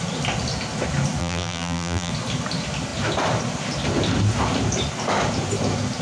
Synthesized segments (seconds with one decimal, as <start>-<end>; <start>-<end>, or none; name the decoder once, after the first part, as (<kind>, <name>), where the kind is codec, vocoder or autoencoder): 1.2-2.1 (vocoder, BigVGAN v2)